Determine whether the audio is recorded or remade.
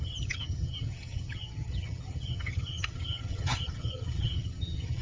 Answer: remade